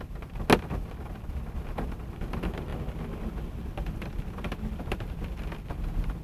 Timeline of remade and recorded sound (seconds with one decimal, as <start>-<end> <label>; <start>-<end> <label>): 0.0-2.7 recorded; 2.7-4.8 remade; 4.8-6.2 recorded